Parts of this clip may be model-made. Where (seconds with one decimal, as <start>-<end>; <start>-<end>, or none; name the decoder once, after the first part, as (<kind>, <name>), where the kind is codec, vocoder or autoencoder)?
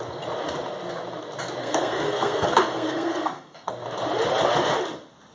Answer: 1.6-3.7 (codec, SNAC)